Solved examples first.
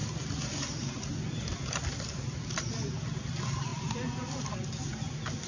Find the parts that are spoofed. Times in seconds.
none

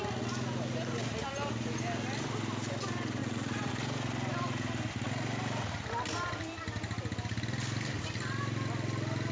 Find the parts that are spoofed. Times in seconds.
3.2-3.7 (vocoder, Vocos)

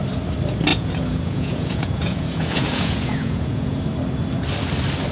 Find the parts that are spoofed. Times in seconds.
0.7-3.8 (vocoder, Vocos)

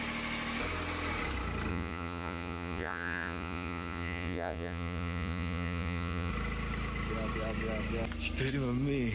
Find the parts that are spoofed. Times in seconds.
1.7-6.3 (vocoder, Vocos)

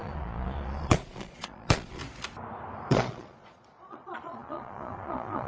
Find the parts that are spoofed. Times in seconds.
0.0-2.0 (vocoder, Vocos); 2.9-5.5

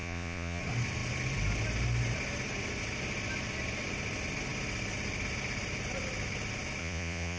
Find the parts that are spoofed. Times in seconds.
0.0-0.6 (vocoder, Vocos); 6.8-7.4

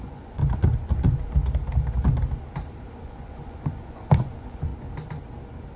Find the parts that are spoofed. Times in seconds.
0.0-0.4 (vocoder, Vocos); 3.0-4.7

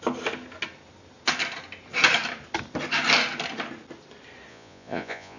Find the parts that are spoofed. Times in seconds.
4.5-5.4 (vocoder, Vocos)